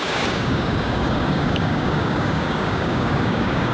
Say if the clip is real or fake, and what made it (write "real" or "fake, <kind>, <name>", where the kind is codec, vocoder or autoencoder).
fake, codec, DAC